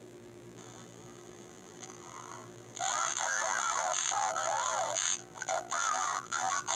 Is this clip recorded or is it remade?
remade